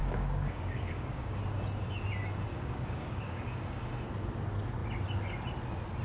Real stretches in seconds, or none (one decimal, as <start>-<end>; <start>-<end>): 1.4-2.5; 3.9-6.0

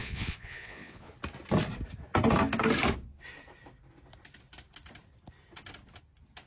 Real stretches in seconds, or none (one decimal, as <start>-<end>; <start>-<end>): 1.1-6.5

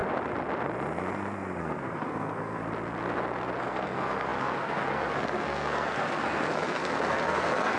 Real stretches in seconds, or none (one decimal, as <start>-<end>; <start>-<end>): 0.0-1.6; 2.6-3.6

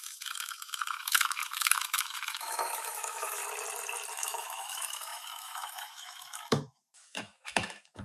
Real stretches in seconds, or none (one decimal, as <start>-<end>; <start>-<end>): 3.4-4.1

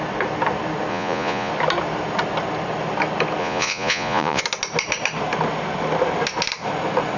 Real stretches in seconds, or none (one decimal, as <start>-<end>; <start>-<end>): 0.0-0.9; 1.5-3.4; 4.4-7.2

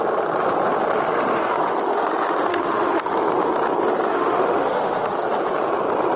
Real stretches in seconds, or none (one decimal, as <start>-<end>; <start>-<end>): 0.0-2.5; 3.1-4.1; 5.1-6.2

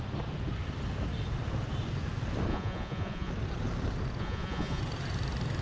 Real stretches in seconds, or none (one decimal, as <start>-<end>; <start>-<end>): 0.0-2.5; 3.3-4.2; 4.8-5.6